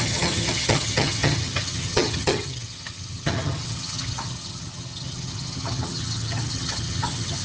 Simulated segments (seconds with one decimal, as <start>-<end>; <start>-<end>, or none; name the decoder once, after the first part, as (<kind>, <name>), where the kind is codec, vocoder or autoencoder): 0.0-7.4 (vocoder, HiFi-GAN)

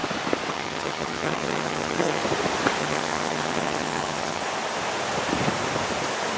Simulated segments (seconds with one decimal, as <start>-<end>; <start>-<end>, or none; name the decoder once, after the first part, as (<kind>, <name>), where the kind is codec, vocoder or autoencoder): 0.5-2.2 (vocoder, HiFi-GAN); 2.8-4.4